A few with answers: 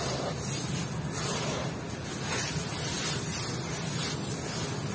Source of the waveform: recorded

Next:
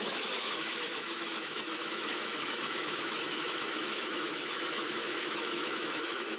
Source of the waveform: remade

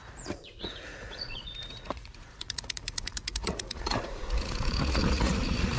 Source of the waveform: remade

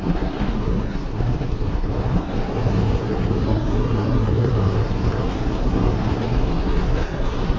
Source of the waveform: remade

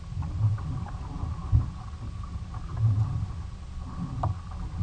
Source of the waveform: recorded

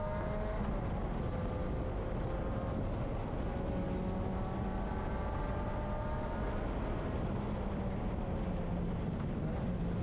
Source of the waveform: recorded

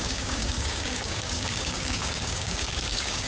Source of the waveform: remade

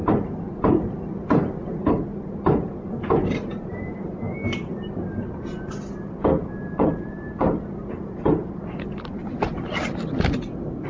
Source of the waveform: recorded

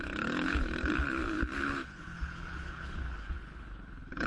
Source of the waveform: remade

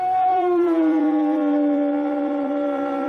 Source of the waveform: remade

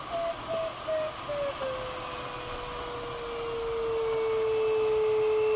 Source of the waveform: recorded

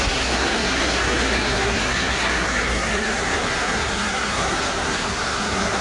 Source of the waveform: remade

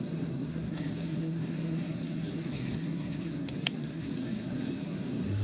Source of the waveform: remade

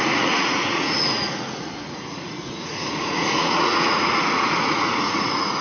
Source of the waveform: remade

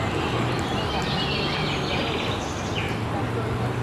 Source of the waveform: recorded